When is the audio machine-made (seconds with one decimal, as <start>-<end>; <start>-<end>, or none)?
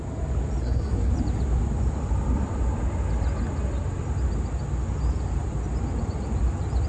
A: 0.6-1.1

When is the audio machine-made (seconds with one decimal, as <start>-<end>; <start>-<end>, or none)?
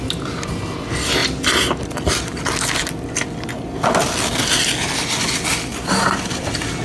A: 5.7-6.8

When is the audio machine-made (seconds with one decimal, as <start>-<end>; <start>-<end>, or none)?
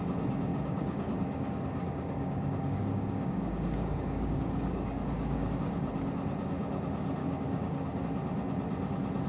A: 0.5-5.5; 7.2-8.0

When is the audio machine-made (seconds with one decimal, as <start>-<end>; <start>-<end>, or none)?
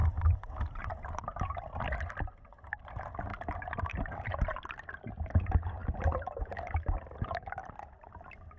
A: none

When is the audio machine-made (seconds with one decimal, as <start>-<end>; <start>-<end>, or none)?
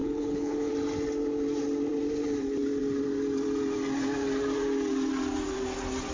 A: 0.0-0.7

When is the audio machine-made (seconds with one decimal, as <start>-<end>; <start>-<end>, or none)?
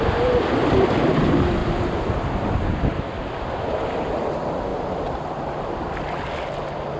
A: none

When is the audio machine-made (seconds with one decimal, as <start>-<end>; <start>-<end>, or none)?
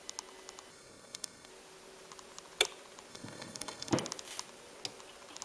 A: 0.7-1.5; 3.1-3.9